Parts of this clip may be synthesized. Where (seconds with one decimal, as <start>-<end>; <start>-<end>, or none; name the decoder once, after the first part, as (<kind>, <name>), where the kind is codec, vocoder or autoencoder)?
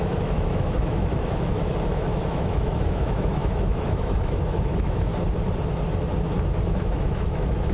0.0-5.1 (autoencoder, DAC-VAE); 6.7-7.7